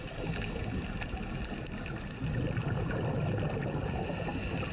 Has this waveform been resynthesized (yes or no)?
no